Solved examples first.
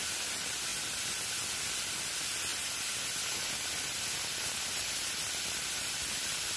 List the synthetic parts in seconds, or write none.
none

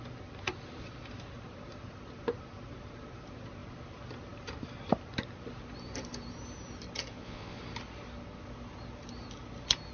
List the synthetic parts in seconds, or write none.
7.1-7.6 (vocoder, Vocos)

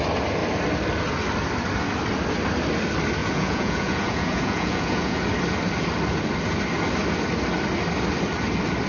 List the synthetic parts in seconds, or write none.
3.2-5.2 (vocoder, Vocos)

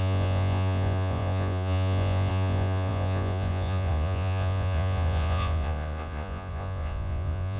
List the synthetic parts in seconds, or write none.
0.0-7.6 (vocoder, Vocos)

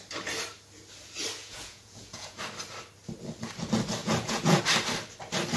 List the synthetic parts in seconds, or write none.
1.4-2.4 (vocoder, Vocos); 4.0-4.6

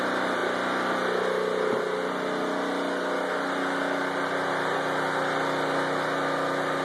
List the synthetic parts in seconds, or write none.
none